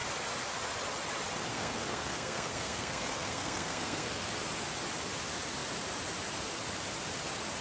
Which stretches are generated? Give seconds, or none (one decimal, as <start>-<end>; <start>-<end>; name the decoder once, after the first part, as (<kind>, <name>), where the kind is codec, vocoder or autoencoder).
1.5-4.3 (codec, SNAC)